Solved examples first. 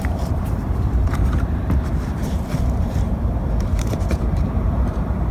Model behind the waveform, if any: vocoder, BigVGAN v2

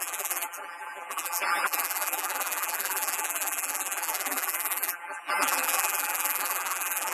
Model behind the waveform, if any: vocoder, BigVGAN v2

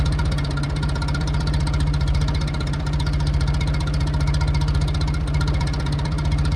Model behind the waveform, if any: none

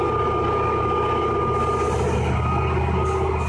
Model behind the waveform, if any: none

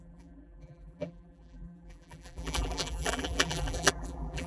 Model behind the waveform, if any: vocoder, BigVGAN v2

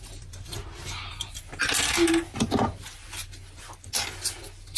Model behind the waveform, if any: none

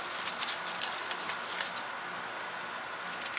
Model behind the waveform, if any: none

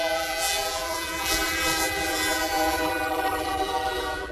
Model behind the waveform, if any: vocoder, BigVGAN v2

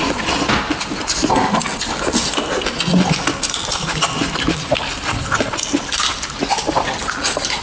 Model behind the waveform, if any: none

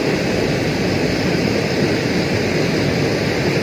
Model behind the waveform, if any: none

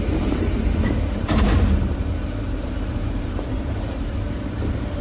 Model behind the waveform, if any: vocoder, BigVGAN v2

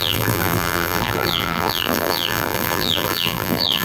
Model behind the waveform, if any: vocoder, BigVGAN v2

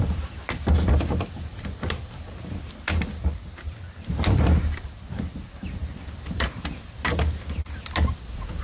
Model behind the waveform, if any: vocoder, BigVGAN v2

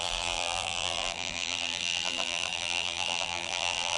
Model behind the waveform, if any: vocoder, BigVGAN v2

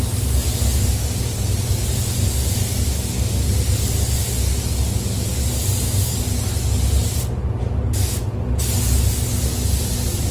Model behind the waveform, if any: none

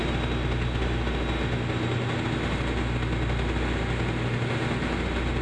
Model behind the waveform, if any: none